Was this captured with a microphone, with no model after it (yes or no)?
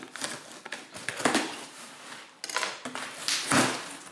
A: yes